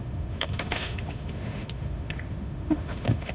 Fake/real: fake